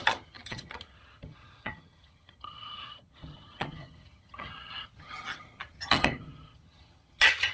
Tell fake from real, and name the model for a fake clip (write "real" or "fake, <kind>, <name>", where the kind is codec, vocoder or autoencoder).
fake, vocoder, HiFi-GAN